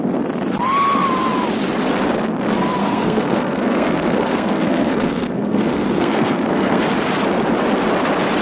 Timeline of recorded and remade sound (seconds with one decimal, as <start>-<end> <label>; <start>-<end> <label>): 0.0-2.8 recorded; 2.8-6.8 remade; 6.8-8.4 recorded